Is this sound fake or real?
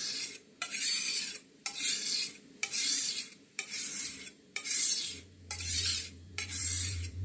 fake